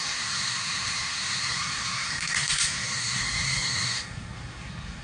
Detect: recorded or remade remade